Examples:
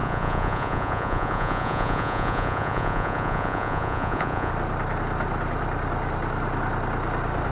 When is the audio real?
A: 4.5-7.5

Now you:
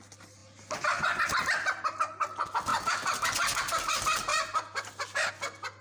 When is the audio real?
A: 0.0-4.3; 5.3-5.8

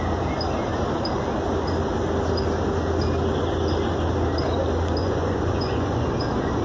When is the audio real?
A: 0.0-5.0; 6.1-6.6

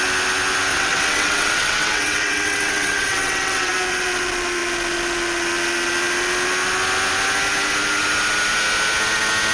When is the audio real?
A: 0.0-0.7; 3.7-9.5

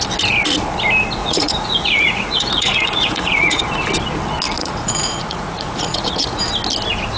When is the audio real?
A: 0.0-1.2; 3.6-4.6; 6.4-7.2

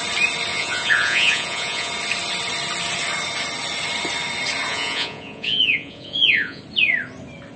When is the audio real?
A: 0.0-0.5; 1.9-4.7; 6.6-7.6

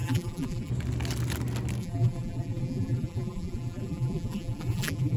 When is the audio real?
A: 0.7-1.8